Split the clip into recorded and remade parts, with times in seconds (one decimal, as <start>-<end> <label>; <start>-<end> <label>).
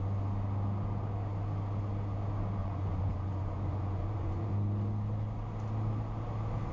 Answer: 0.0-2.6 recorded; 2.6-4.5 remade; 4.5-6.7 recorded